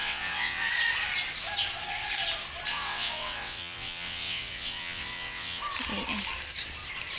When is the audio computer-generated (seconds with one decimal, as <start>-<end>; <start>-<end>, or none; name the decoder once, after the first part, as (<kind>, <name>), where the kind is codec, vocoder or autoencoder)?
0.0-0.7 (vocoder, WaveNeXt); 2.7-5.6